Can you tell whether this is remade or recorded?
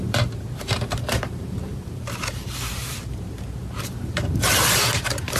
remade